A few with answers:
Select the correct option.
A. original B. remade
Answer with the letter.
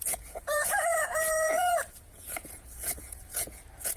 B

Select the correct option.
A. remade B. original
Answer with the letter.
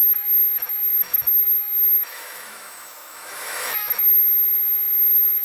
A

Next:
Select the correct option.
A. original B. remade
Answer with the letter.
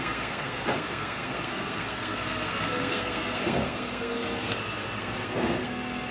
B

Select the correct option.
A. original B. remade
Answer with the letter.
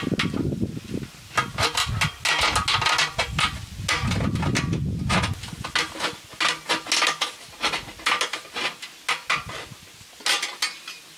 A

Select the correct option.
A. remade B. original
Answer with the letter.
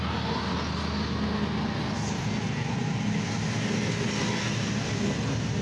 B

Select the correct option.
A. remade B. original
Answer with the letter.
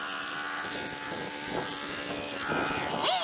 B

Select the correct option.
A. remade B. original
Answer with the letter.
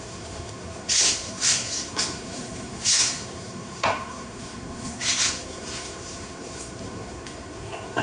A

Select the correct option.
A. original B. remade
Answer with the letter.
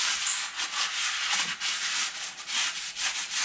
A